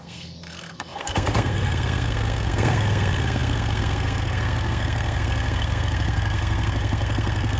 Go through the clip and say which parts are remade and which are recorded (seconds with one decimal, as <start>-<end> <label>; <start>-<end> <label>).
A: 0.0-7.6 remade